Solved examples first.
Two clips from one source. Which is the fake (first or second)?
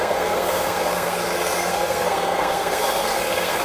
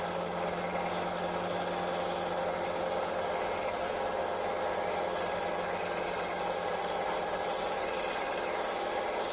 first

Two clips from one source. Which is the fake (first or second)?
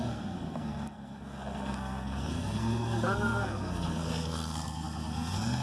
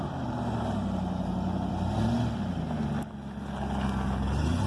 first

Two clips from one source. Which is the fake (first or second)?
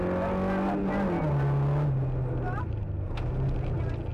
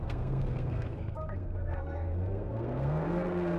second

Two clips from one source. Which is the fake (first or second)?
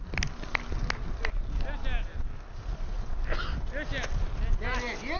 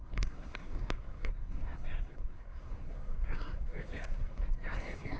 second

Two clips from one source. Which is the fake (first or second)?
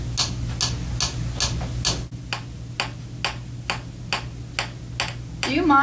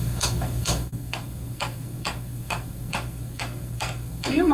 second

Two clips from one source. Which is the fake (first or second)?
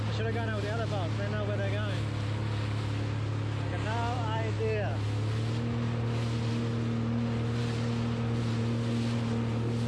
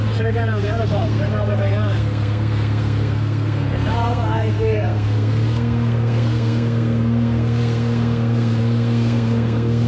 second